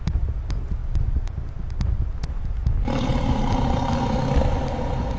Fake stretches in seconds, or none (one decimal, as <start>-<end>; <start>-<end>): 0.8-3.9